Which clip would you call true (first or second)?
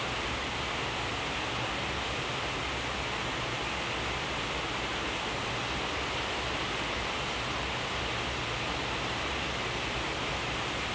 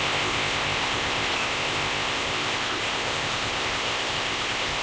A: first